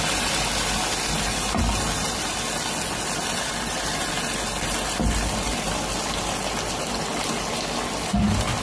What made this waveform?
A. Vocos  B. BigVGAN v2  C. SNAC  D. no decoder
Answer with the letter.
D